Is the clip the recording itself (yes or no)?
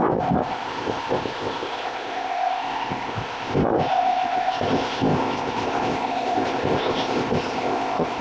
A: no